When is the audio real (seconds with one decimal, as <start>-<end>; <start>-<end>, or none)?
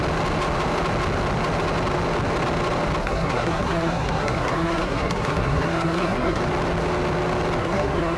0.0-3.0; 6.4-7.6